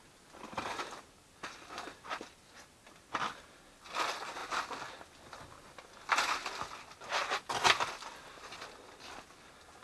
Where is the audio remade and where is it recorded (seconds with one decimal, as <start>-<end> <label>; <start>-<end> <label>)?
0.0-9.8 recorded